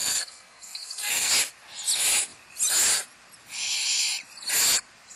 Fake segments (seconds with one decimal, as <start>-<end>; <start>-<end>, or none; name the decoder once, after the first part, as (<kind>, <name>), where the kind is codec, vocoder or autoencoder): 0.0-1.3 (codec, SNAC)